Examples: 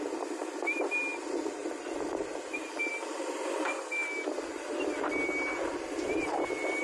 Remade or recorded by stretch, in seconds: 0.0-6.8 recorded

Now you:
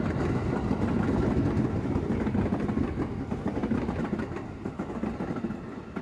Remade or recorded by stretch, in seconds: 0.0-6.0 recorded

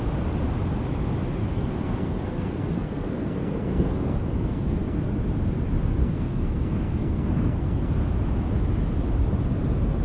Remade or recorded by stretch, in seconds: 0.0-1.4 recorded; 1.4-5.1 remade; 5.1-6.0 recorded; 6.0-7.9 remade; 7.9-10.0 recorded

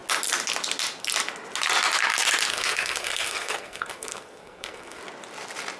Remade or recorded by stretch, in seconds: 0.0-2.5 recorded; 2.5-5.0 remade; 5.0-5.8 recorded

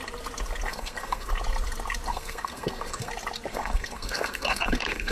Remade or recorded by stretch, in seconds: 0.0-0.7 recorded; 0.7-1.3 remade; 1.3-2.1 recorded; 2.1-3.1 remade; 3.1-3.5 recorded; 3.5-5.1 remade